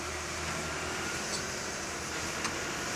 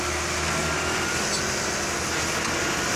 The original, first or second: second